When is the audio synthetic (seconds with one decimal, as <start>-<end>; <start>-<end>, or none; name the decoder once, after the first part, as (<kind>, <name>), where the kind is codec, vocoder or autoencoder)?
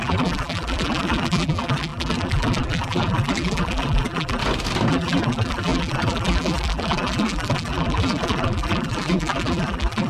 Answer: 0.0-4.4 (vocoder, BigVGAN v2); 4.9-10.1